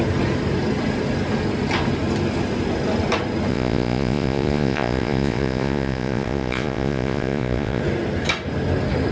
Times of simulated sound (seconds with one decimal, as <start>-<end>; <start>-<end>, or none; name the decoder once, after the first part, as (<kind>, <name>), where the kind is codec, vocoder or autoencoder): 3.5-7.8 (vocoder, Vocos)